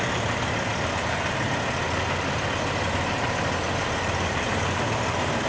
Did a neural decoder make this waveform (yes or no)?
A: no